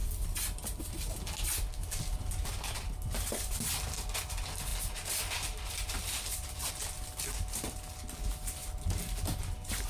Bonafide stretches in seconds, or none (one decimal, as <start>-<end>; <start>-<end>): 0.0-9.9